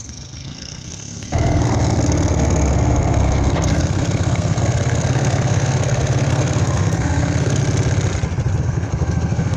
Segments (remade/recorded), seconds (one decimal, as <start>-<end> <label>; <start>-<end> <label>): 0.0-7.6 remade; 7.6-8.6 recorded; 8.6-9.6 remade